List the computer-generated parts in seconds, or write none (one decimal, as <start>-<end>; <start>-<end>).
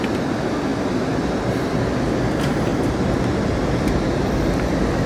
2.7-3.2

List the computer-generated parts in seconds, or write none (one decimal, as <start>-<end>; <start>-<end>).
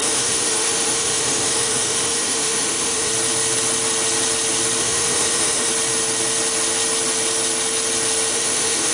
0.0-3.1; 4.8-5.7; 8.3-8.9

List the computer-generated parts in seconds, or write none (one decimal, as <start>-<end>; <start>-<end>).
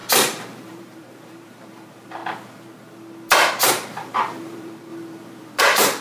0.6-2.2; 3.7-4.9; 5.6-6.0